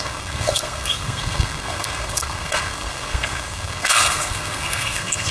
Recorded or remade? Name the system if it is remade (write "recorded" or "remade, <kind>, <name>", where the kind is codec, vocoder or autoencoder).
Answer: remade, codec, SNAC